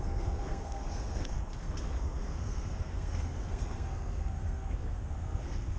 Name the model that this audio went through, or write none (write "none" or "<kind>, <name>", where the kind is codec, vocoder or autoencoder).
codec, SNAC